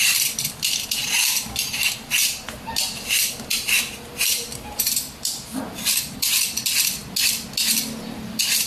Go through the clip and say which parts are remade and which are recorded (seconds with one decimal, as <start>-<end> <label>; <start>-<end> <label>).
0.0-7.0 remade; 7.0-8.1 recorded; 8.1-8.7 remade